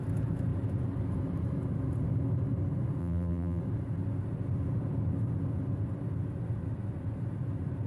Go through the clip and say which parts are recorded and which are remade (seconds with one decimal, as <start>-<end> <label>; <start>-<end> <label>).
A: 0.0-3.0 recorded; 3.0-3.6 remade; 3.6-7.9 recorded